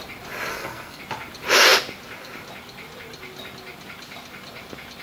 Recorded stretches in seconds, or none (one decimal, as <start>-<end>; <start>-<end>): 0.0-0.5; 1.0-5.0